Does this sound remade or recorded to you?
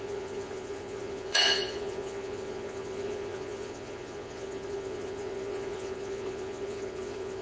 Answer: remade